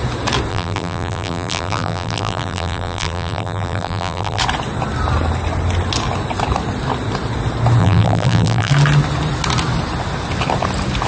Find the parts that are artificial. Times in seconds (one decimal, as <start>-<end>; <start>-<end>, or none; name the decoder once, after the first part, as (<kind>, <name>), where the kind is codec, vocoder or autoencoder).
0.5-4.4 (vocoder, BigVGAN v2); 7.8-8.7